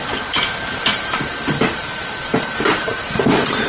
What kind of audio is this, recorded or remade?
remade